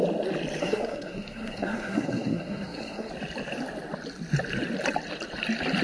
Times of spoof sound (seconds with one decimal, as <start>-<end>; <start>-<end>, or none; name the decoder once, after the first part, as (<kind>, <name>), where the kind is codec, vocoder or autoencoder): 0.6-3.1 (codec, SNAC)